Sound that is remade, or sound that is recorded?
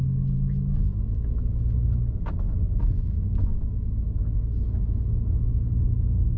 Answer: remade